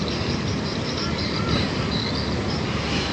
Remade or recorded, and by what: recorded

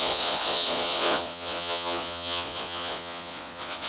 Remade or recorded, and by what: remade, vocoder, Vocos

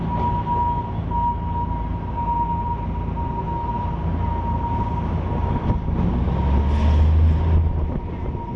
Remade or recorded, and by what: recorded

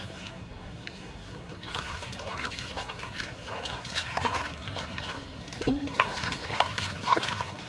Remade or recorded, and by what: remade, codec, SNAC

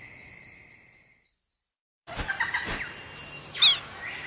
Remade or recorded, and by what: recorded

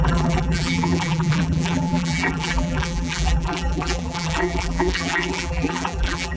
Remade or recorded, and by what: remade, vocoder, BigVGAN v2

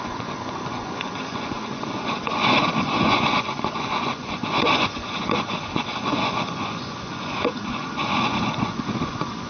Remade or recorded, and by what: remade, vocoder, Vocos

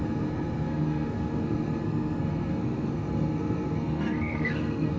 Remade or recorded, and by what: remade, codec, SNAC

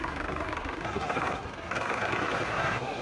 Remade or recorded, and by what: remade, codec, SNAC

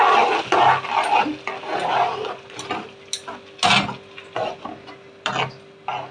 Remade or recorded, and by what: recorded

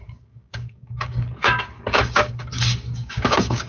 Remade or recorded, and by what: remade, codec, DAC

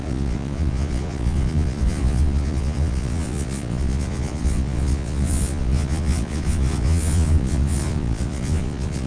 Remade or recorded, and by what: remade, vocoder, Vocos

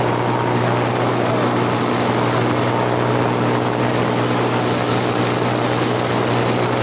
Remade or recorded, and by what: recorded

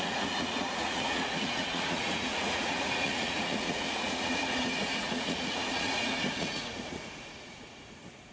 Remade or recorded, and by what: remade, vocoder, Vocos